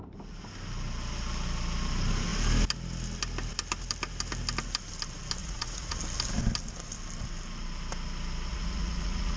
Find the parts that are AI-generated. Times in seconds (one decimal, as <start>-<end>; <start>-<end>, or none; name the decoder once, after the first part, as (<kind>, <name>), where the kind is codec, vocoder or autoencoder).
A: 5.4-6.0 (vocoder, Vocos); 8.5-9.4